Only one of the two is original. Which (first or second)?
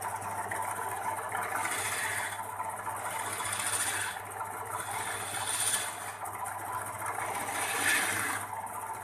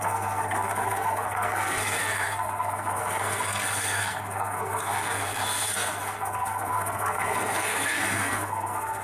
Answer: first